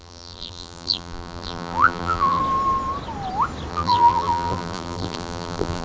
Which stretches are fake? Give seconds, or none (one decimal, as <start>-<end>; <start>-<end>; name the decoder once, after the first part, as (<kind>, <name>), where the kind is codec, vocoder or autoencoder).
0.0-2.4 (vocoder, BigVGAN v2); 3.7-5.8